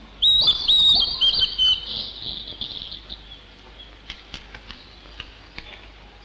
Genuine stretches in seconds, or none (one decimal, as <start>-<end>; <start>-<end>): 0.0-6.2